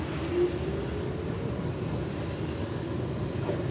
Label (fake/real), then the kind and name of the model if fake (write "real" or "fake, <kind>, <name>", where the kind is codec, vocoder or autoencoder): real